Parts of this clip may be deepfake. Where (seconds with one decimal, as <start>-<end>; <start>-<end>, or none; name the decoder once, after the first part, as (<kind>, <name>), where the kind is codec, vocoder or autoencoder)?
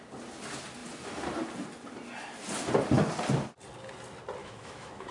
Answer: 4.4-5.1 (autoencoder, DAC-VAE)